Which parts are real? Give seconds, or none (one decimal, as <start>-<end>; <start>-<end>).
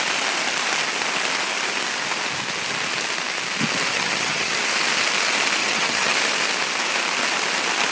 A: 0.0-3.9; 4.5-5.6; 6.1-7.9